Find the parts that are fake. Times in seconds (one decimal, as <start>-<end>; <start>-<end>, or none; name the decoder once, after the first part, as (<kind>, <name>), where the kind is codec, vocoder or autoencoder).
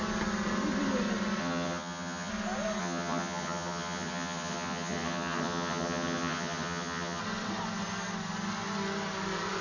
1.4-2.3 (vocoder, HiFi-GAN); 2.8-7.2